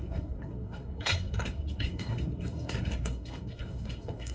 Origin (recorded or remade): remade